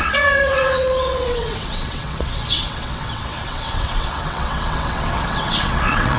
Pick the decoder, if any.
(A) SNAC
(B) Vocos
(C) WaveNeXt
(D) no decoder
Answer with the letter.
C